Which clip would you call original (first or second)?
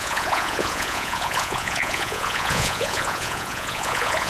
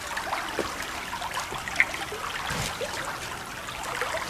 second